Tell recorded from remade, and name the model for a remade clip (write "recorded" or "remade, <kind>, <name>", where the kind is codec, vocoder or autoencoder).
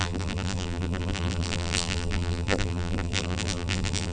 remade, vocoder, BigVGAN v2